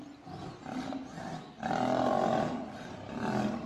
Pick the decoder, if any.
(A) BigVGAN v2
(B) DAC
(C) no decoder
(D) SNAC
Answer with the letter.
C